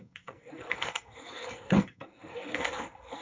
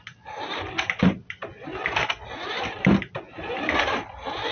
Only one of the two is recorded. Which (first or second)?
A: second